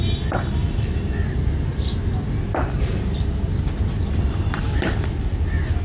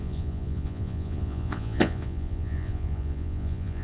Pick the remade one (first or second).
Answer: second